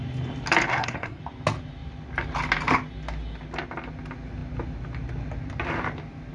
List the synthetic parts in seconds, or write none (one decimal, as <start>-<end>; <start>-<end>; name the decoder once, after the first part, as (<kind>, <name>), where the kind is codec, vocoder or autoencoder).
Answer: 0.7-1.2 (codec, SNAC)